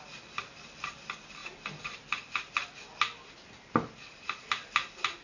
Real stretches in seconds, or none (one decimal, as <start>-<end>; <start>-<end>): 0.0-5.2